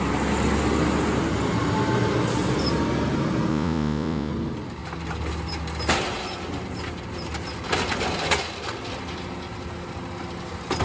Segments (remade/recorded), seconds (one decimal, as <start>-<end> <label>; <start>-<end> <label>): 0.0-3.5 recorded; 3.5-4.3 remade; 4.3-10.8 recorded